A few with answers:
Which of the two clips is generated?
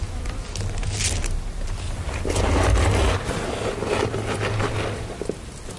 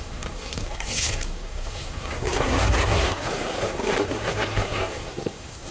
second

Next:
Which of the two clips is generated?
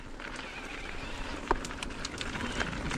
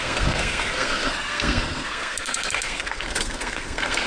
second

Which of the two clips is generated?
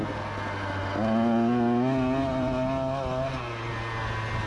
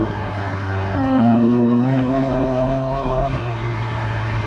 second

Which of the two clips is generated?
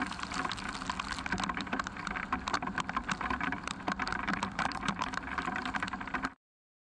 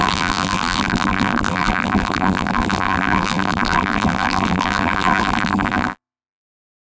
second